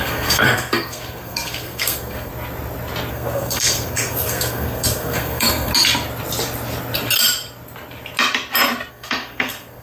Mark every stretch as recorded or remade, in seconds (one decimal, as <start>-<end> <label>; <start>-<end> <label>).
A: 0.0-2.3 remade; 2.3-3.1 recorded; 3.1-5.7 remade; 5.7-8.9 recorded; 8.9-9.8 remade